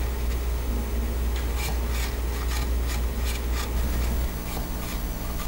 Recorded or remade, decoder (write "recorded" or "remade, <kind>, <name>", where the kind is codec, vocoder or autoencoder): recorded